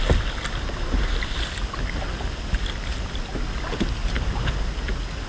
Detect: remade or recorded recorded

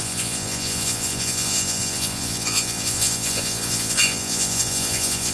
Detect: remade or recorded remade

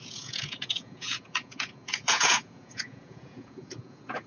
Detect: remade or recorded remade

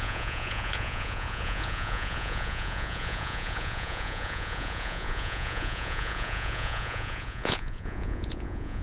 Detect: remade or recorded remade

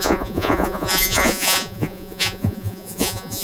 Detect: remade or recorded remade